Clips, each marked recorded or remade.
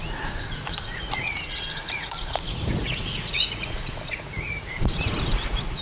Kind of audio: remade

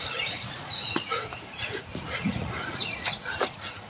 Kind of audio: remade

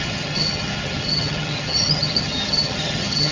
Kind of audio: remade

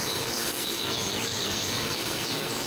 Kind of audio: remade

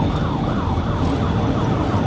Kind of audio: recorded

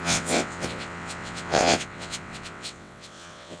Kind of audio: remade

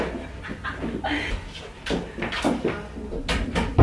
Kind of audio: recorded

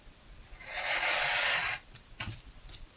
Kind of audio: remade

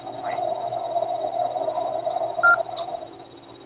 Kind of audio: recorded